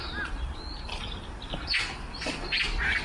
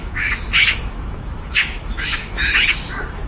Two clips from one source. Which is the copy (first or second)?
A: second